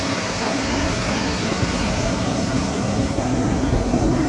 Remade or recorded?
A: remade